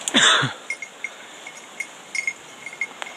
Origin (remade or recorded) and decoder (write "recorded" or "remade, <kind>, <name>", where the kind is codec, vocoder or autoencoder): recorded